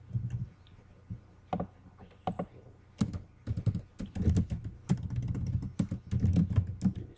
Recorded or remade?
recorded